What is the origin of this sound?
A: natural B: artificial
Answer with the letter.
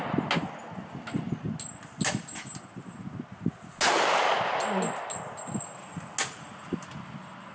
A